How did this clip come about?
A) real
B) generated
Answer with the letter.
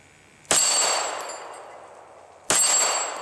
A